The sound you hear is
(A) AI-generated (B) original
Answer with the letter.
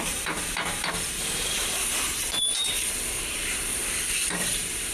A